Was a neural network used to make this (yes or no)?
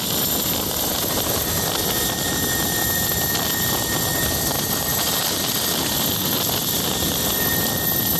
no